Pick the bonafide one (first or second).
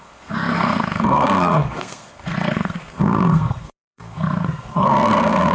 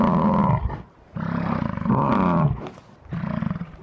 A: second